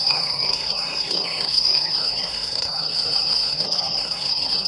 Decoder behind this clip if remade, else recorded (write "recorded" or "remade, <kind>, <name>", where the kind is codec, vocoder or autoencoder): remade, codec, SNAC